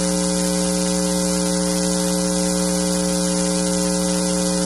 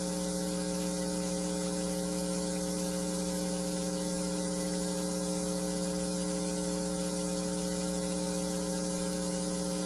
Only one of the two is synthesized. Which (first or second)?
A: second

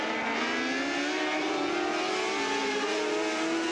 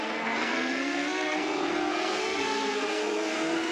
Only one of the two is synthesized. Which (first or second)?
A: second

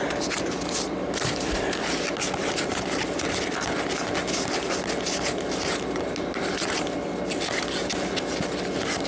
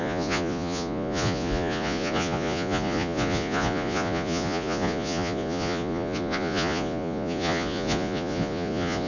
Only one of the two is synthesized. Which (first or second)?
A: second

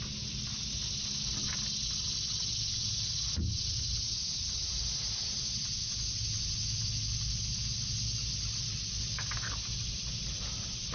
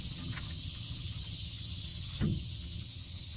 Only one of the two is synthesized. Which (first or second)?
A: second